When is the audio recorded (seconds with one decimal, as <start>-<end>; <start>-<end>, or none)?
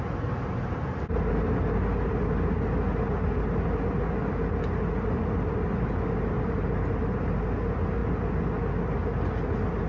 0.0-9.9